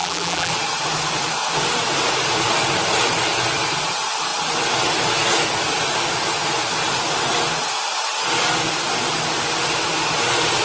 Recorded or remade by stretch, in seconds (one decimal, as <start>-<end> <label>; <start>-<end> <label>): 0.0-0.5 remade; 0.5-10.6 recorded